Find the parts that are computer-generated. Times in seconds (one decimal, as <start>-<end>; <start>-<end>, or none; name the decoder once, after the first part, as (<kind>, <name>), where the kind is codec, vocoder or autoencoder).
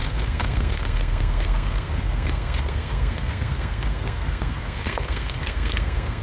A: 0.0-6.2 (codec, SNAC)